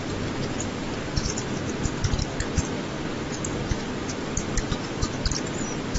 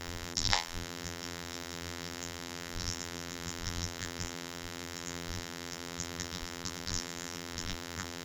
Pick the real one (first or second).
first